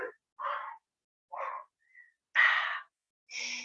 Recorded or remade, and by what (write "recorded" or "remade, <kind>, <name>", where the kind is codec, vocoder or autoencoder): recorded